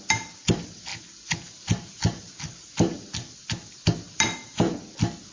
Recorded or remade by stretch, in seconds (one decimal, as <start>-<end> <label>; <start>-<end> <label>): 0.0-5.3 recorded